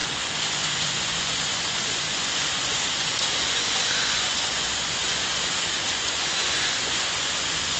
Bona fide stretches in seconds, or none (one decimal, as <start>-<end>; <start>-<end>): none

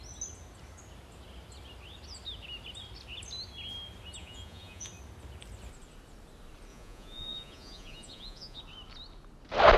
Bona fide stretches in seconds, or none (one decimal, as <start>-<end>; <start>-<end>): 0.0-4.2; 4.9-6.7; 8.6-9.8

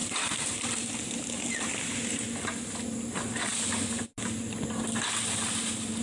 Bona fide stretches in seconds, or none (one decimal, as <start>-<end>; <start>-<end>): 0.0-6.0

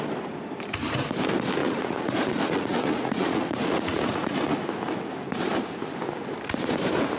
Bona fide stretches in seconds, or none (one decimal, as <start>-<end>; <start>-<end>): 0.0-1.6; 4.6-7.2

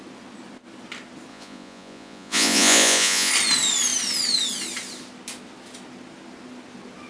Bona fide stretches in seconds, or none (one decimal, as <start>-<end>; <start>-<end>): 0.0-1.3; 3.3-7.1

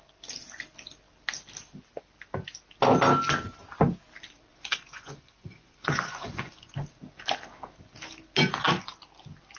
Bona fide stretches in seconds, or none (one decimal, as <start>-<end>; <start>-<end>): 0.0-4.5; 6.7-9.6

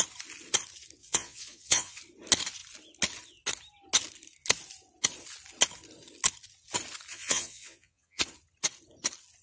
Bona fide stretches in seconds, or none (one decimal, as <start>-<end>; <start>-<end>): 0.0-1.0; 2.0-7.1; 8.2-9.4